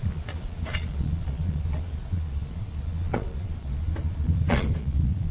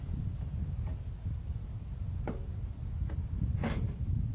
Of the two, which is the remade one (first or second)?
first